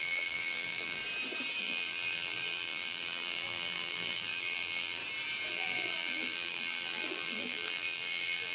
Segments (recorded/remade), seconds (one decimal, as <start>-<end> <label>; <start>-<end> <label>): 0.0-1.0 remade; 1.0-1.6 recorded; 1.6-5.0 remade; 5.0-5.5 recorded; 5.5-8.5 remade